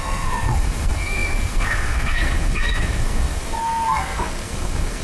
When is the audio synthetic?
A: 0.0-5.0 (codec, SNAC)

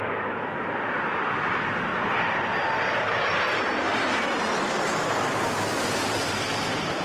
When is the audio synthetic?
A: none

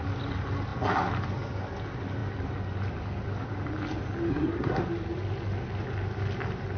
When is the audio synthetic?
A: 4.3-4.8 (codec, SNAC)